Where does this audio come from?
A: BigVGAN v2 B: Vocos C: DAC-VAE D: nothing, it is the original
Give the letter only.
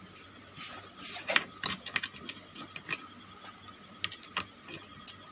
D